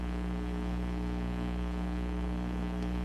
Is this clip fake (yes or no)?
yes